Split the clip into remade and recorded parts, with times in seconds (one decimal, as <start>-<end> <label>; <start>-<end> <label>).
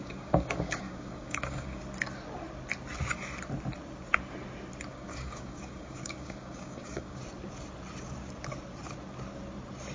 0.0-1.8 remade; 1.8-4.9 recorded; 4.9-7.2 remade; 7.2-9.9 recorded